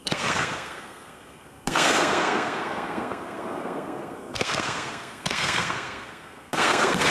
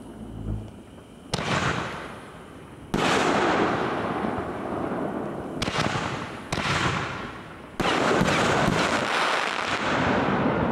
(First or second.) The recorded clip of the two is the second